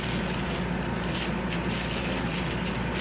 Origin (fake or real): real